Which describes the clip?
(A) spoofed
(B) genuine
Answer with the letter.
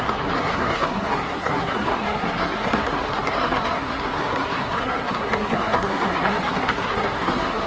A